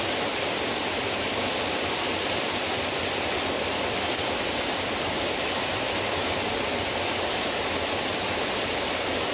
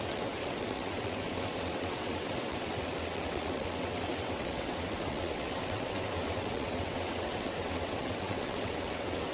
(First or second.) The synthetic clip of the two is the second